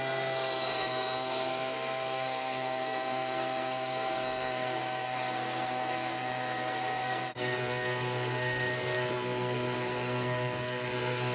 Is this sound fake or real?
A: fake